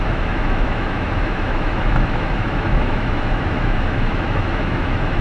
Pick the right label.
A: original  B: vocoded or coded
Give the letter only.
B